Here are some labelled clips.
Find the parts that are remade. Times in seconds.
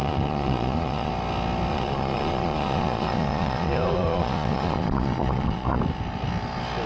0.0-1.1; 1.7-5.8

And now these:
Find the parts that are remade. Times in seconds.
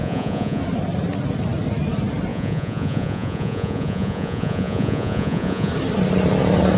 0.0-0.6; 2.3-5.7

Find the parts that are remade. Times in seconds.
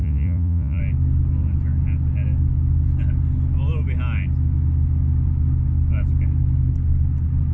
0.0-0.8